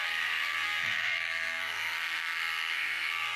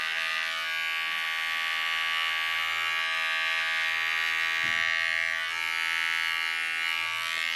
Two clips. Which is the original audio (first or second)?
second